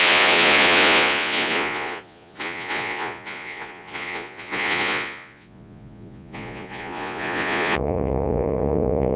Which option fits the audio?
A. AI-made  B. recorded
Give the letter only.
A